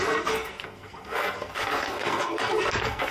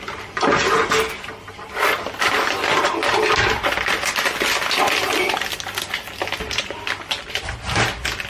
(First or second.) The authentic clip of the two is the second